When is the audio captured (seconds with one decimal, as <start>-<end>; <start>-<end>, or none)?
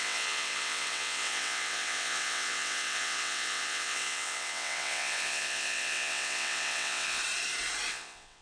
7.2-7.9